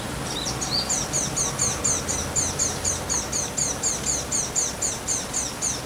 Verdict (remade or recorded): recorded